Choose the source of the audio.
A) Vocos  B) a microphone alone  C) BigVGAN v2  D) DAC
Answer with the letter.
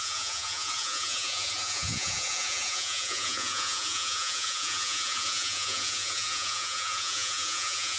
A